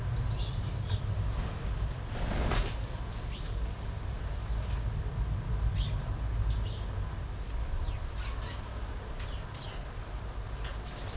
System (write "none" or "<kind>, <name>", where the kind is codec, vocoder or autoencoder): none